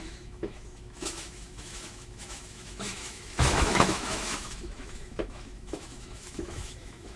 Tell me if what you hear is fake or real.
fake